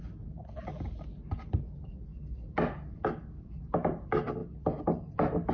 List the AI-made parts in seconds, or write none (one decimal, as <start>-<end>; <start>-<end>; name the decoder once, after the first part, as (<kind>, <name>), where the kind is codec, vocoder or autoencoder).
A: none